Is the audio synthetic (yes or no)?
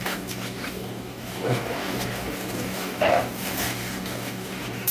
yes